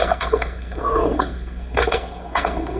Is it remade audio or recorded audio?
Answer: remade